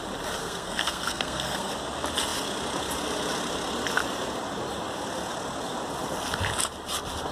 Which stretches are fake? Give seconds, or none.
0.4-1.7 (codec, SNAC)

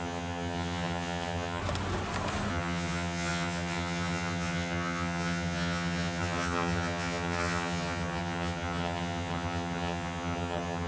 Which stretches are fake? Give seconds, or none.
0.0-1.6 (vocoder, HiFi-GAN); 2.5-10.9

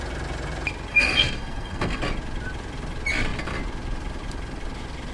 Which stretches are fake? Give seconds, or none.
0.9-2.0 (codec, SNAC)

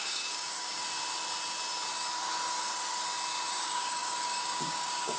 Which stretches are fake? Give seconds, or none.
0.0-0.8 (codec, DAC); 3.5-5.2

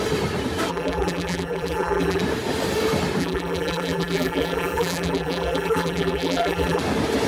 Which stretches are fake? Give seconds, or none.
0.7-2.2 (vocoder, BigVGAN v2); 3.2-6.8

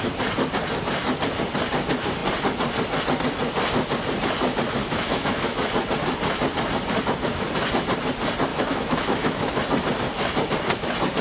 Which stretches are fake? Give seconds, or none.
4.8-5.7 (autoencoder, DAC-VAE); 8.5-9.6

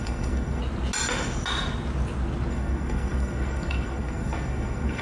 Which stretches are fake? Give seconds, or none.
0.0-0.6 (codec, SNAC); 2.5-5.0